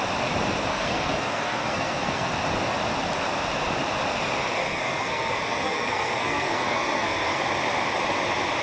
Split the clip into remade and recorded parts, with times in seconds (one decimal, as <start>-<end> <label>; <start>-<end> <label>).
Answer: 0.0-0.7 recorded; 0.7-2.3 remade; 2.3-4.6 recorded; 4.6-7.4 remade; 7.4-8.6 recorded